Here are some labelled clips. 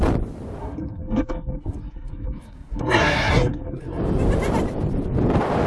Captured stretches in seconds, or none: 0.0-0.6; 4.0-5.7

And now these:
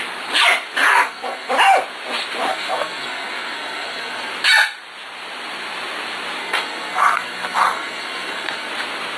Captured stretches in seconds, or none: 0.0-0.9; 1.5-2.5; 4.3-6.4; 8.7-9.2

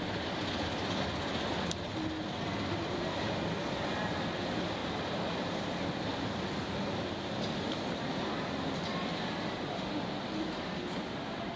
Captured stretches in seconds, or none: 0.0-11.6

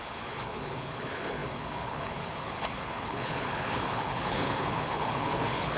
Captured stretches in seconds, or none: none

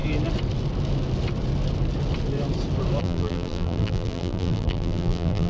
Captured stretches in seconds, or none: 0.0-3.0